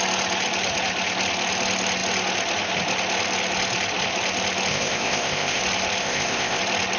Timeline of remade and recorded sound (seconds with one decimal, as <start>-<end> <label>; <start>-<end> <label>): 0.0-4.7 recorded; 4.7-5.6 remade; 5.6-6.0 recorded; 6.0-6.6 remade; 6.6-7.0 recorded